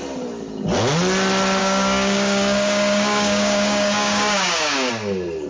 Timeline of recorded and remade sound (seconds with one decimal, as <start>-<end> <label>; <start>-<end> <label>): 0.0-1.6 recorded; 1.6-4.9 remade; 4.9-5.5 recorded